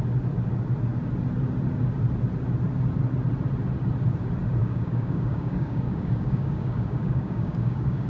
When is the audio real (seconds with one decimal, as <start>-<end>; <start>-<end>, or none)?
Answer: 0.0-4.6